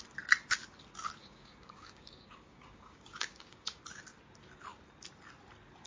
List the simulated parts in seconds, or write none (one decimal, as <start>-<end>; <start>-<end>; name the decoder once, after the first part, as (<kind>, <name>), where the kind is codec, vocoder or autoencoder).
1.2-3.8 (codec, DAC)